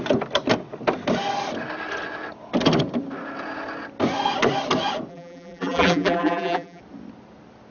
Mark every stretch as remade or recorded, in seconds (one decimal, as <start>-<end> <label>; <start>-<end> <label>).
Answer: 0.0-5.1 recorded; 5.1-6.8 remade; 6.8-7.7 recorded